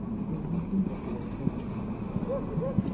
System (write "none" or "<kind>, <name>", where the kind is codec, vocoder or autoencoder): none